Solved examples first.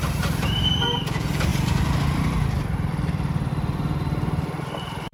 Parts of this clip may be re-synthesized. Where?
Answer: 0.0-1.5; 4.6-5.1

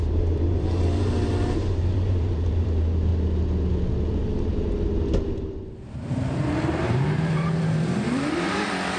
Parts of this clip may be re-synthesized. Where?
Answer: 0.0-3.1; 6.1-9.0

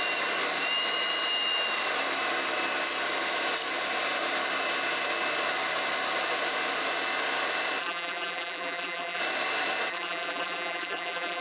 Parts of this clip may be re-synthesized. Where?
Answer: 7.8-9.2; 9.9-11.4